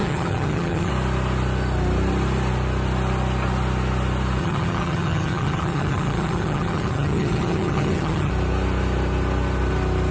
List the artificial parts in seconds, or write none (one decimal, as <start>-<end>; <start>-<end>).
0.0-0.9; 4.4-8.3